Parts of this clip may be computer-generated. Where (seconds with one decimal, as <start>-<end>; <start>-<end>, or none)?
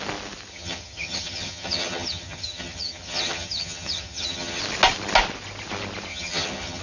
0.5-4.6; 6.1-6.8